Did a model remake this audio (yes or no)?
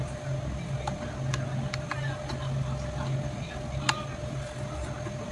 no